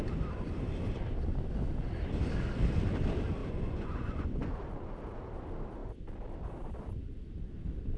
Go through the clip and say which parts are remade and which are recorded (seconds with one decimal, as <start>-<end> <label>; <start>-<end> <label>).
0.0-3.4 recorded; 3.4-4.5 remade; 4.5-8.0 recorded